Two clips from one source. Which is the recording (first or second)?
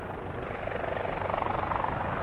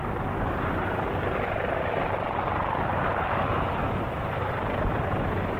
first